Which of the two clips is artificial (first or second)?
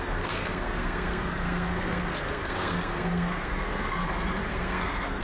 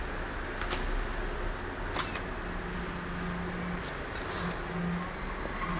first